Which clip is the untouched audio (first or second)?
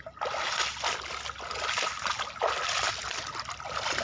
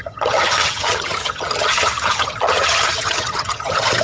first